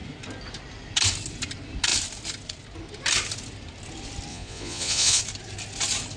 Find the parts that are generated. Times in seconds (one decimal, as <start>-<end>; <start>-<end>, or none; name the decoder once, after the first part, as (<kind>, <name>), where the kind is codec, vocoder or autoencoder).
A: 4.3-5.2 (vocoder, Vocos)